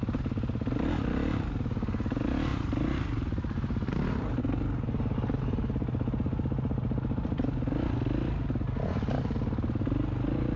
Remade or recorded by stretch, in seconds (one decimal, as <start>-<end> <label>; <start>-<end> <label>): 0.0-10.6 recorded